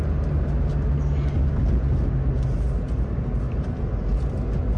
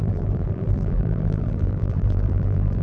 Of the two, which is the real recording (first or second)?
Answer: first